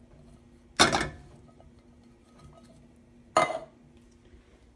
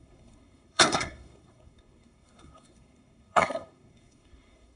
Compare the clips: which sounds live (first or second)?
first